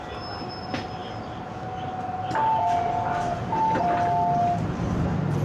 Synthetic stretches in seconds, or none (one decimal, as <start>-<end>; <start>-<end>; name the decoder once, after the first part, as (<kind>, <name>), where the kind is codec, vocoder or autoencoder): none